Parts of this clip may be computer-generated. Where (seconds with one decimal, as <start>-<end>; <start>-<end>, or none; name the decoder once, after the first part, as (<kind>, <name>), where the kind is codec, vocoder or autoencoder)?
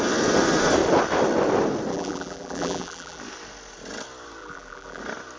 1.9-3.2 (vocoder, BigVGAN v2); 4.4-5.0